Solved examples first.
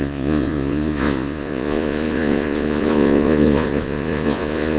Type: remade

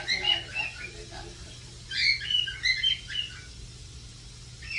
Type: recorded